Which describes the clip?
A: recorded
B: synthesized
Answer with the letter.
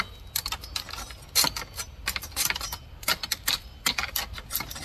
A